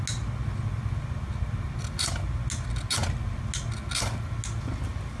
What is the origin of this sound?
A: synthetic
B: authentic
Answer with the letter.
B